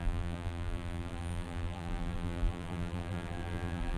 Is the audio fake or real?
fake